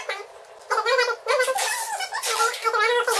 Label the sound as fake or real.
real